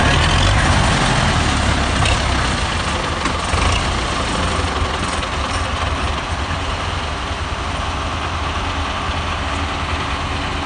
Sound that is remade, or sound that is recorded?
recorded